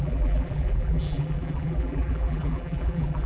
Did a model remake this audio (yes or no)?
yes